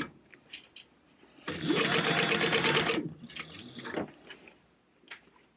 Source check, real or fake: real